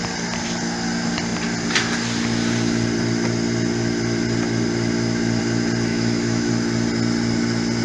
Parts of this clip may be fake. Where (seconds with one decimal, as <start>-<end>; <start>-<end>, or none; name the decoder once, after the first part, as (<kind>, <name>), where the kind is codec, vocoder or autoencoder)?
5.9-6.5 (autoencoder, DAC-VAE)